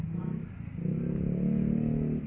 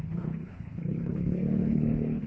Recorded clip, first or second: first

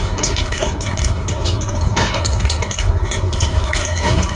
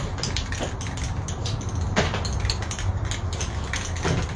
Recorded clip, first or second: second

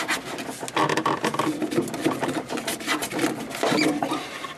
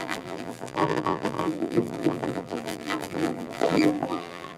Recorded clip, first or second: first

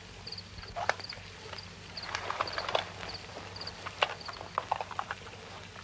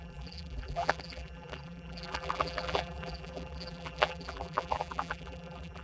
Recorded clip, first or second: first